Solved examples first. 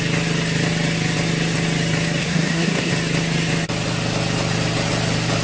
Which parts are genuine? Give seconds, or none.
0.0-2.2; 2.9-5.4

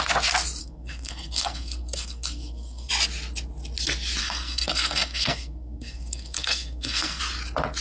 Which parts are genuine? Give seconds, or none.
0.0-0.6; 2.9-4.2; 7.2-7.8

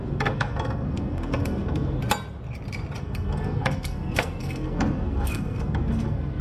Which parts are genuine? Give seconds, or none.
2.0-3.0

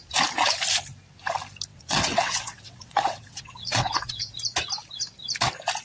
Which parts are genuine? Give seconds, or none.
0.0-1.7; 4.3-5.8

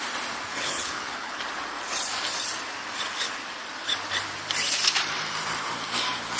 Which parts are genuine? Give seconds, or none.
0.0-0.5; 1.4-6.4